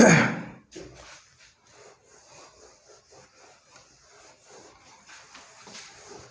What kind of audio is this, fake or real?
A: real